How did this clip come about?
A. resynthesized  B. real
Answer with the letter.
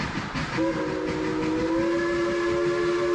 B